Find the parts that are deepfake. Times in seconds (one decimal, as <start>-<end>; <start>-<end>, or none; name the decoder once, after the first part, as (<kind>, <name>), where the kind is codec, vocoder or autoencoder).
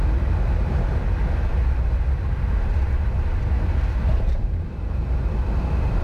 none